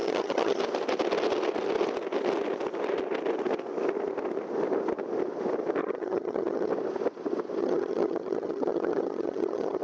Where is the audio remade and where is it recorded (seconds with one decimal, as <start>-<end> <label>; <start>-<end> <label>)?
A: 0.0-0.6 remade; 0.6-5.8 recorded; 5.8-6.7 remade; 6.7-7.6 recorded; 7.6-9.8 remade